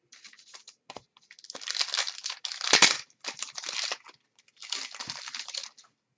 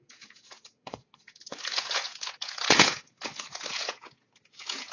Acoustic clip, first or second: first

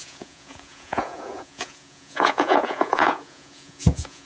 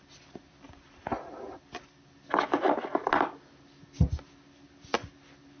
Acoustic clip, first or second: second